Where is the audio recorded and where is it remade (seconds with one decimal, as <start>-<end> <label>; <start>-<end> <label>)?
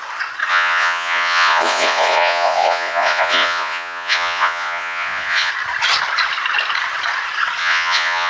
0.0-0.5 recorded; 0.5-5.5 remade; 5.5-7.6 recorded; 7.6-8.3 remade